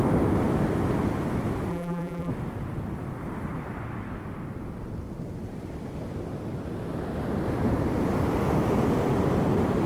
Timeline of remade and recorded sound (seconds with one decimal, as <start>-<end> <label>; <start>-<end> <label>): 0.0-1.7 recorded; 1.7-2.3 remade; 2.3-9.9 recorded